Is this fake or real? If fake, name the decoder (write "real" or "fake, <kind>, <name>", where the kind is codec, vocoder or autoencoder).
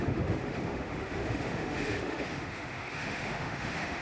fake, autoencoder, DAC-VAE